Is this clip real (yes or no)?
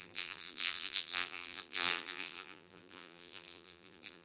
no